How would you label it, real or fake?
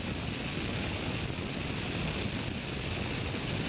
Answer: real